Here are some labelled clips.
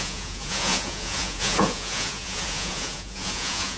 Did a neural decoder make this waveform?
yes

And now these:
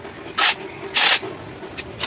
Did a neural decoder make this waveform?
no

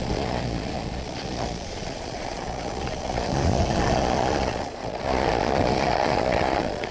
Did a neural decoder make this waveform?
yes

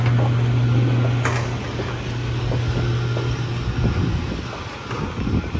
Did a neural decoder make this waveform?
no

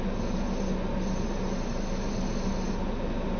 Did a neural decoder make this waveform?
no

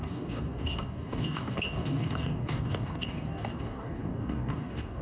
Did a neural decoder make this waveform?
yes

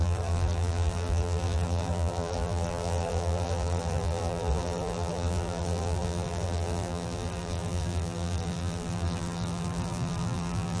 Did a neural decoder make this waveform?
yes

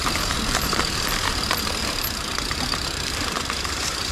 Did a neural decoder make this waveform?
yes